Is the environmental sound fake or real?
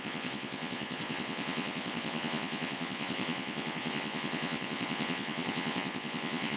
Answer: fake